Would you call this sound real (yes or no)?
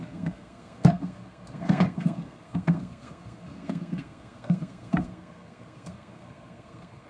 no